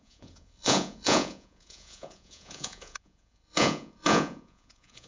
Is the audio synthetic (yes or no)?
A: yes